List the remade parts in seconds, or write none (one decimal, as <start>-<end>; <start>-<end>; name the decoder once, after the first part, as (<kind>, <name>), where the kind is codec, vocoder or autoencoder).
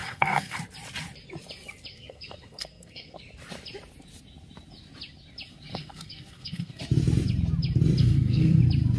0.0-0.6 (codec, SNAC); 1.9-3.2; 5.7-6.8; 8.0-8.6